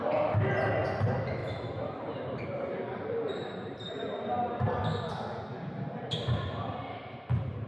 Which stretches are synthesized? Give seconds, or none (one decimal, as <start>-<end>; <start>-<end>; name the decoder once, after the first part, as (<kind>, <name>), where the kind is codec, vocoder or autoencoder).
1.4-4.8 (vocoder, BigVGAN v2)